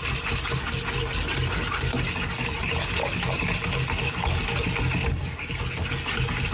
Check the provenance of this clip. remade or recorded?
recorded